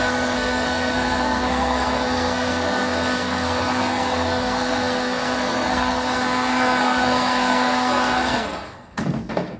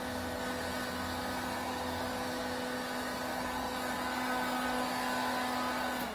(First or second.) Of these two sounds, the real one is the second